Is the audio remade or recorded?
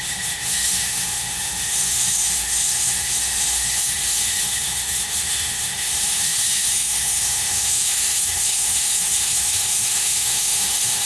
remade